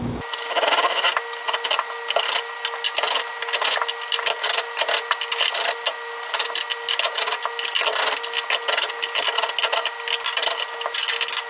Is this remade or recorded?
recorded